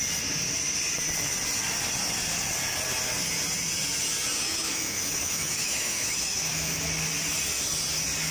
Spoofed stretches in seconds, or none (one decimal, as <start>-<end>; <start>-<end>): 4.4-6.9